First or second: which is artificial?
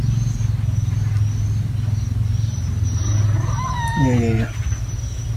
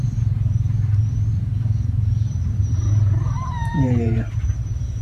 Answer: second